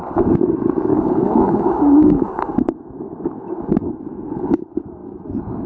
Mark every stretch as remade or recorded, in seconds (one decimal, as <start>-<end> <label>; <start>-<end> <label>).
0.0-0.9 recorded; 0.9-3.8 remade; 3.8-5.7 recorded